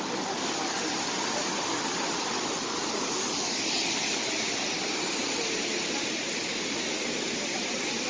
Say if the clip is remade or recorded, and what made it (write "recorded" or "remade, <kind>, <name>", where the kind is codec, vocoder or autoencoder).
recorded